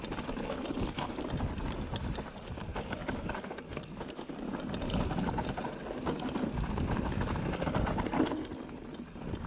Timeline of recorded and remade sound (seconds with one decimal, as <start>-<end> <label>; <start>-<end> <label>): 0.0-2.7 recorded; 2.7-4.0 remade; 4.0-9.5 recorded